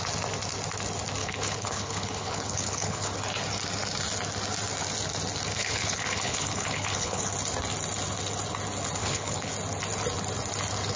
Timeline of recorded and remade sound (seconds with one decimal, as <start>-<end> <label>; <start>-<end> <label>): 0.0-1.2 recorded; 1.2-3.1 remade; 3.1-5.6 recorded; 5.6-7.3 remade; 7.3-9.0 recorded; 9.0-9.5 remade; 9.5-11.0 recorded